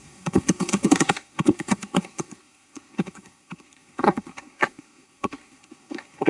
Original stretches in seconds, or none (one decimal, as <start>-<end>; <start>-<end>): none